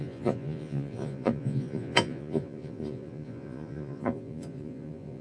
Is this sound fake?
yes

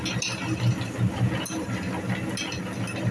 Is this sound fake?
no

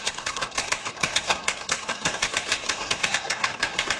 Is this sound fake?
yes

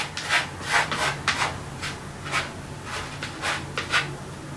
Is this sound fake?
no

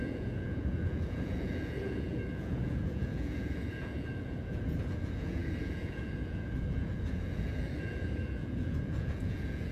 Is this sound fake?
yes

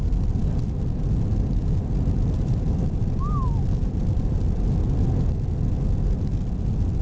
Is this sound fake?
no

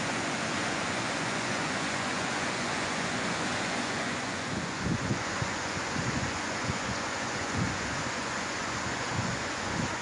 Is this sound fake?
yes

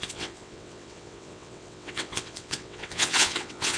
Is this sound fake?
yes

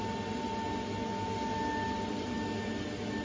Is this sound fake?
no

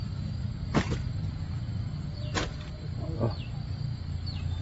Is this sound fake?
no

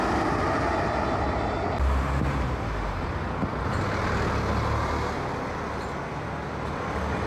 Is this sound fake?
no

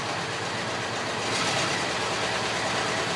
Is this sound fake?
no